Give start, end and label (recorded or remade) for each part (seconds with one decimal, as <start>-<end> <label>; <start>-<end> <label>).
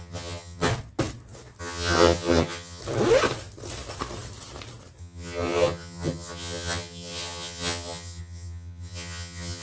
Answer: 0.0-0.7 remade; 0.7-1.6 recorded; 1.6-2.8 remade; 2.8-5.0 recorded; 5.0-9.6 remade